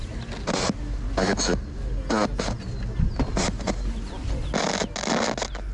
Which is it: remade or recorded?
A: recorded